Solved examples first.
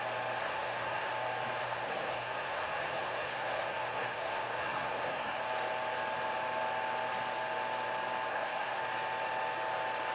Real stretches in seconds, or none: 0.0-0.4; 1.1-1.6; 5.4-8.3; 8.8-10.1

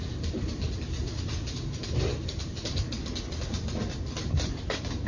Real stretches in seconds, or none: 0.0-5.1